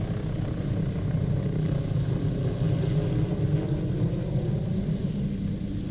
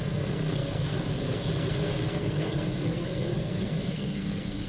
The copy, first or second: second